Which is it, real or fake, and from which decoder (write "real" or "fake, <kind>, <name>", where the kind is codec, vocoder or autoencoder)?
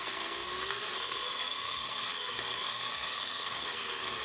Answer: fake, codec, SNAC